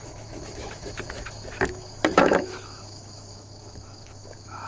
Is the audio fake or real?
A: fake